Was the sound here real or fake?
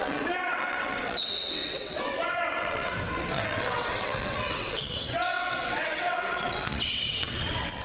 fake